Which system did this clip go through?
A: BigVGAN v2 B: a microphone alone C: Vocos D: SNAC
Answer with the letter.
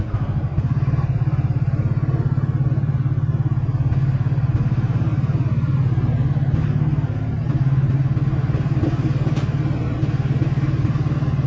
B